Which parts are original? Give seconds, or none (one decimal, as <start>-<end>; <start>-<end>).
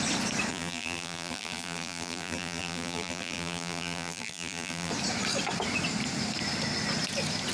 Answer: 0.0-0.5; 4.9-7.5